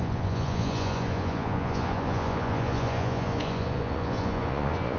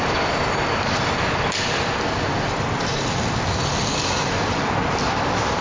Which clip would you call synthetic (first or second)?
first